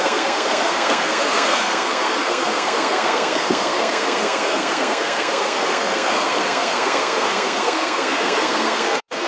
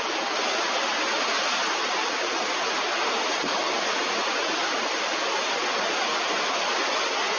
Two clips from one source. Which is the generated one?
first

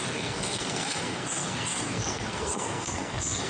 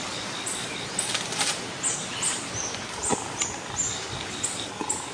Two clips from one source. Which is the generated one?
first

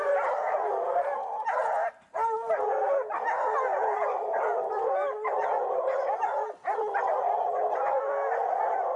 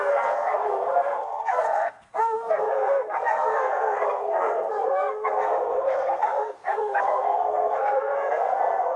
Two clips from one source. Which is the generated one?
second